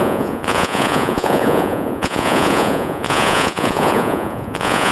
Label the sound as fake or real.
fake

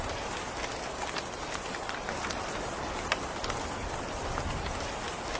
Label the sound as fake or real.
real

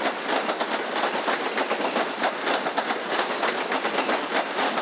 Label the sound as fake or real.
real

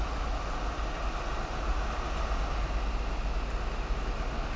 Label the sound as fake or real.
real